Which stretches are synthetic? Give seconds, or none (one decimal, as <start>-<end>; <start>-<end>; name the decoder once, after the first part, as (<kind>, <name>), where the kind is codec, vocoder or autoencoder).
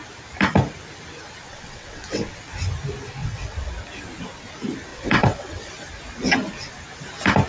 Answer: 1.5-2.3 (vocoder, WaveNeXt); 3.2-3.7; 4.9-5.7